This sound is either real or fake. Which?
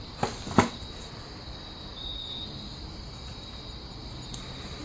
real